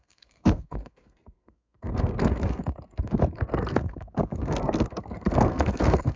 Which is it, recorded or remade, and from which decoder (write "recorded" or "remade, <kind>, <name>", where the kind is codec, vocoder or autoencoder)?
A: remade, codec, SNAC